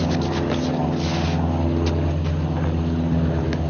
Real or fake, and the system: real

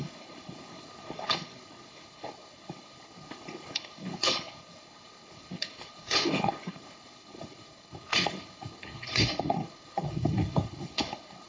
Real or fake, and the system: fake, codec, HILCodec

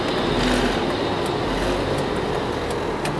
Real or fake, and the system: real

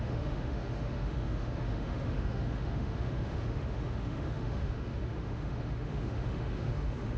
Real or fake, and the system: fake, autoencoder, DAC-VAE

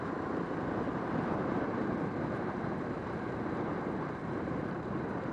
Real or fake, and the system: fake, vocoder, BigVGAN v2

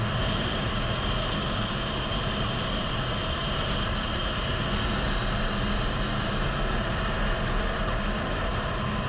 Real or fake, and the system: real